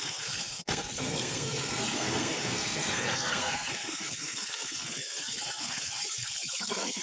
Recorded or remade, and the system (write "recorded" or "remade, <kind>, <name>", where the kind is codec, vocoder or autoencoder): remade, codec, SNAC